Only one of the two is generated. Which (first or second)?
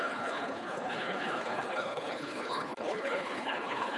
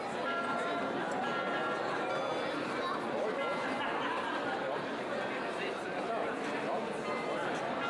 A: first